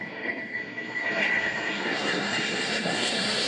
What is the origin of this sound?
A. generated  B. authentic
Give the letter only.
A